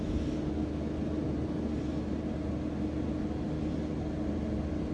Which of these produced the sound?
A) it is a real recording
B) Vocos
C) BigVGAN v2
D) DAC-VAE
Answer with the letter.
A